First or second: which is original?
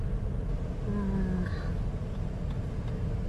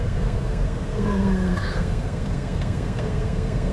first